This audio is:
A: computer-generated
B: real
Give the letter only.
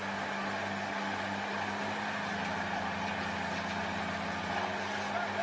B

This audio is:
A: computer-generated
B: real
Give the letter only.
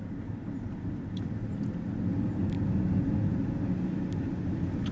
B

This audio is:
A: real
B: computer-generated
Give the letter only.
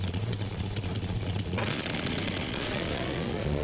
B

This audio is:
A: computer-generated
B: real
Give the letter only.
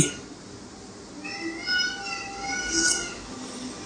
B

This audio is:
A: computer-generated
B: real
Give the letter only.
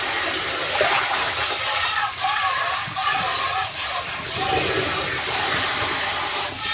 B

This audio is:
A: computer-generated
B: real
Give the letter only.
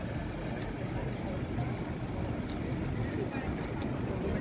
B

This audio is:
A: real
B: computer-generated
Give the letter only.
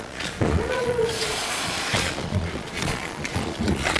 B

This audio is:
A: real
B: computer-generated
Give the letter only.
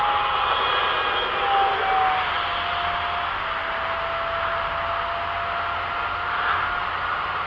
A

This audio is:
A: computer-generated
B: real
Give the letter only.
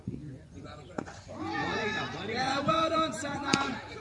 A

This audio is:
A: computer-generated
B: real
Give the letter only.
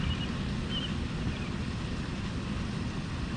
B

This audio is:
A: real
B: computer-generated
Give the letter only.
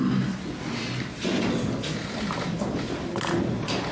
A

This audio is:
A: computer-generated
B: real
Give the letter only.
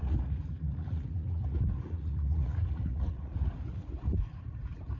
A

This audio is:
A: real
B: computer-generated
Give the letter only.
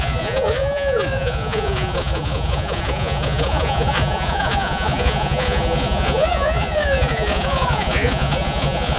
B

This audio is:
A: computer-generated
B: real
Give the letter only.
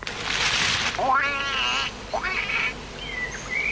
B